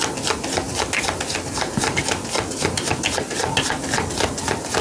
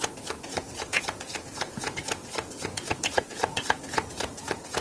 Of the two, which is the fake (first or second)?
second